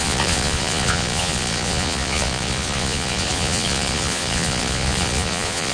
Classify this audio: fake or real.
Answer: fake